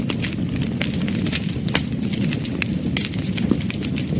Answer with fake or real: real